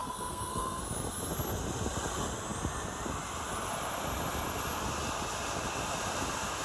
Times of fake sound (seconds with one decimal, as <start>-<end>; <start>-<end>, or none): 0.0-0.8